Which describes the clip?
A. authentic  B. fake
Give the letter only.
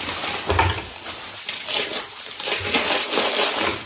B